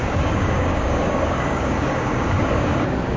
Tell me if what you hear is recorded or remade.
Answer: remade